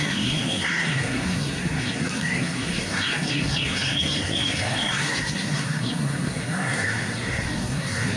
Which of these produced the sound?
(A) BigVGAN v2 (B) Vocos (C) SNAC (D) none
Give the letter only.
C